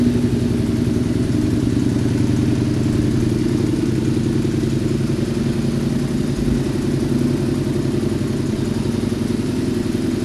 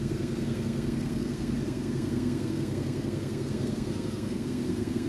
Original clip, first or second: first